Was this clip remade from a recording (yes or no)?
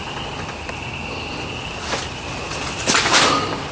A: no